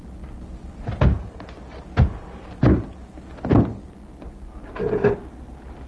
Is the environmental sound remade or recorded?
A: recorded